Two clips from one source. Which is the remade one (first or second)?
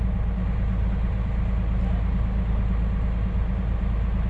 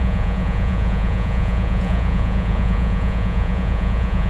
second